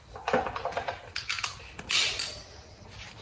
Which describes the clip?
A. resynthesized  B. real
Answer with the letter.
B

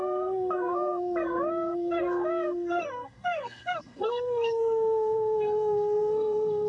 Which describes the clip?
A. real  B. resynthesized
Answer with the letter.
B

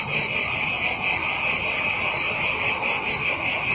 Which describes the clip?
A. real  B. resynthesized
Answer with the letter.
A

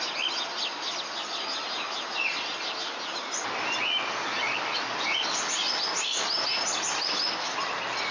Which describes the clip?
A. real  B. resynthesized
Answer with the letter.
A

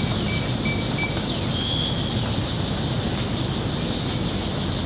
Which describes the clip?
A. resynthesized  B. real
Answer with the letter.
B